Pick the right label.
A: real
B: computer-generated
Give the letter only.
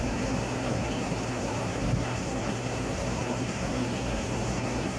B